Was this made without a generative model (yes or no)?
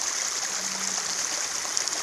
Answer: yes